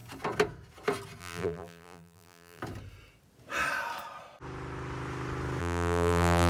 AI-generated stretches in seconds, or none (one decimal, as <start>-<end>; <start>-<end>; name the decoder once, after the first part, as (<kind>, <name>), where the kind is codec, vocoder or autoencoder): 1.2-2.6 (vocoder, BigVGAN v2); 5.6-6.5